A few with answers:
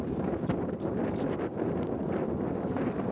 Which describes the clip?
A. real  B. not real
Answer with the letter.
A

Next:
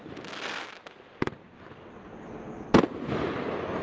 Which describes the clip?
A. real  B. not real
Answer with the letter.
A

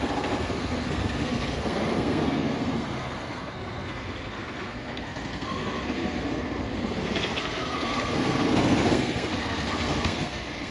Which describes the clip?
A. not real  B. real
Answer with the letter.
A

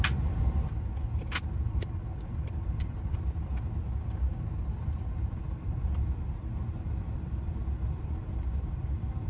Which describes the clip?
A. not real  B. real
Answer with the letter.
B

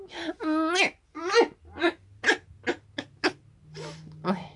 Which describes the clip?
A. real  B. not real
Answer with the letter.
A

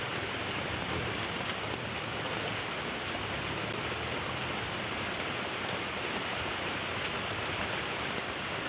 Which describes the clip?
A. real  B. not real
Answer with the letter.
A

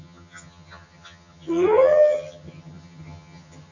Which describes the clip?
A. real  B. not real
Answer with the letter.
B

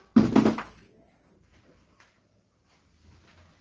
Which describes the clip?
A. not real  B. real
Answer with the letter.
B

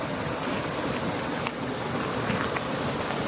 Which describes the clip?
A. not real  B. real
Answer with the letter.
B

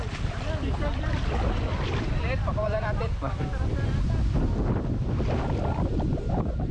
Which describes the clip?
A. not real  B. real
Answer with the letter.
B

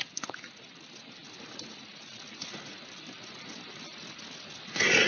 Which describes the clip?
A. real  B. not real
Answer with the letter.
A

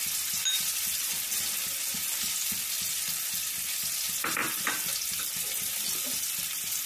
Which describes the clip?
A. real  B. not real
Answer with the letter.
A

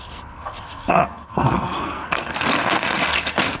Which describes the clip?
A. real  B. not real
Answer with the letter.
B